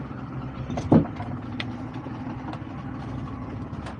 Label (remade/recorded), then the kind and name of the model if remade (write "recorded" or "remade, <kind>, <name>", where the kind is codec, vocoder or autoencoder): recorded